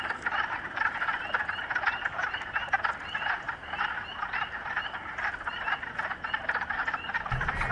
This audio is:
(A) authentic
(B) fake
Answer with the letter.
A